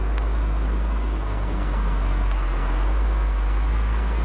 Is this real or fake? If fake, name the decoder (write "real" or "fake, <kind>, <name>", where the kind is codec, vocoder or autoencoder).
fake, codec, SNAC